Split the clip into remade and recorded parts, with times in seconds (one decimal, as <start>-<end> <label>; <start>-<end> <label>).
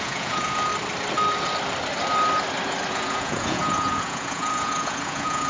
0.0-0.7 remade; 0.7-2.9 recorded; 2.9-5.5 remade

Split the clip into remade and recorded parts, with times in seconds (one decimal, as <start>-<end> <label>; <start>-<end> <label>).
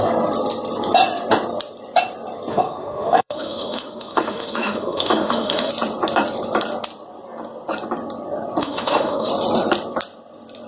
0.0-2.5 recorded; 2.5-5.7 remade; 5.7-8.6 recorded; 8.6-9.3 remade; 9.3-10.7 recorded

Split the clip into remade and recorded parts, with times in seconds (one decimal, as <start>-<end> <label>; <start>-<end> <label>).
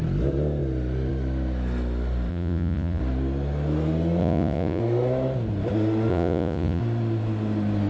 0.0-2.3 recorded; 2.3-3.0 remade; 3.0-4.2 recorded; 4.2-4.8 remade; 4.8-6.1 recorded; 6.1-6.8 remade; 6.8-7.9 recorded